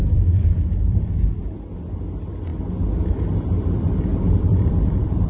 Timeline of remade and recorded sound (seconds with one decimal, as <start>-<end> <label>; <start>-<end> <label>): 0.0-1.1 remade; 1.1-4.1 recorded; 4.1-5.3 remade